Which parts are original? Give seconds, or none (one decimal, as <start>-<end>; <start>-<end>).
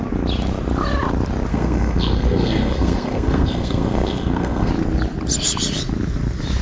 0.0-1.5; 4.7-6.6